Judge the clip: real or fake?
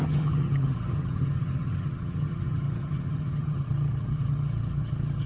fake